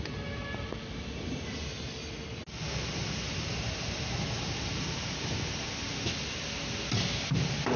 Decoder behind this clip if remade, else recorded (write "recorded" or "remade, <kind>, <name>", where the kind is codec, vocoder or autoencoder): recorded